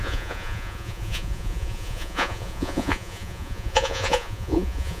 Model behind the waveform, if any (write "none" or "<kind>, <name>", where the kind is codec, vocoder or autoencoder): vocoder, Vocos